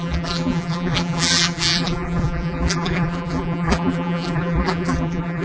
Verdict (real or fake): fake